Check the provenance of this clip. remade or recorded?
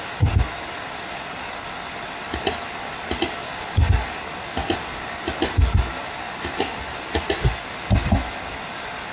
recorded